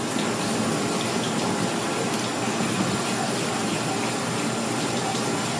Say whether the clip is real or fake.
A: real